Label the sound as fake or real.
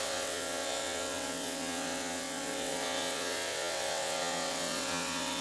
fake